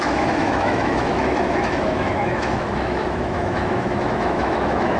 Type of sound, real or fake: fake